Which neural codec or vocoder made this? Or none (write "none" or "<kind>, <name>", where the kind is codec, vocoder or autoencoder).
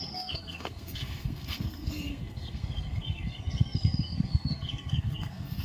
codec, SNAC